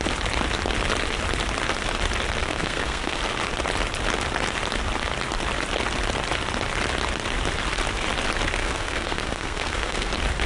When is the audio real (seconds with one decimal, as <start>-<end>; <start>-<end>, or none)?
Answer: 0.0-2.4; 3.2-8.6; 10.1-10.5